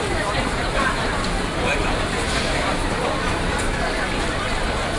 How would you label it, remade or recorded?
remade